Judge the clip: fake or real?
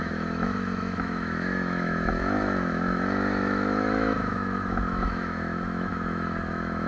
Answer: fake